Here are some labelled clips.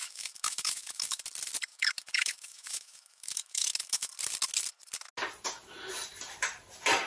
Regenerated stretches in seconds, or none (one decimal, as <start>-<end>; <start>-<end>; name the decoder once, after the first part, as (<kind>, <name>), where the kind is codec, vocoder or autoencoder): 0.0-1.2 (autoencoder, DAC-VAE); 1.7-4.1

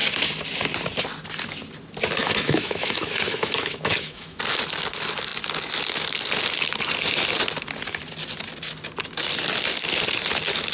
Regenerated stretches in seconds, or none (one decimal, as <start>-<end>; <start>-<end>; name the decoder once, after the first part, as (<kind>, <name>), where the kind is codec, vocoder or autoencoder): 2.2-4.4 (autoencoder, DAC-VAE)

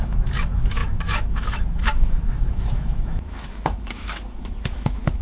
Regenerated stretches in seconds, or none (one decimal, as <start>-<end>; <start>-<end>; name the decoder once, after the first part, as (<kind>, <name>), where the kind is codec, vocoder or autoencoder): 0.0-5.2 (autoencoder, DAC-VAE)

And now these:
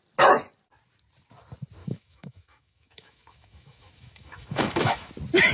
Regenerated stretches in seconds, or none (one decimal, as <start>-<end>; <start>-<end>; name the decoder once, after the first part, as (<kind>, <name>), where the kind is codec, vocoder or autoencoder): 1.8-5.1 (autoencoder, DAC-VAE)

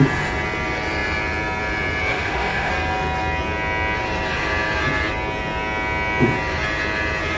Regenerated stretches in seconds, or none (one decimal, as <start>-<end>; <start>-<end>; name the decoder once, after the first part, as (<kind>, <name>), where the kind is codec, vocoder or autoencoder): 2.1-2.7 (autoencoder, DAC-VAE)